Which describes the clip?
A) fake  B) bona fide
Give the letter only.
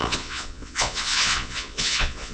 A